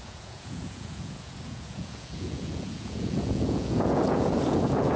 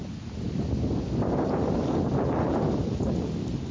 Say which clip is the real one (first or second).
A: second